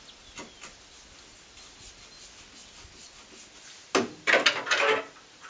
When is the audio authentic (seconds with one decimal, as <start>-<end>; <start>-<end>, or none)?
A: 0.0-5.5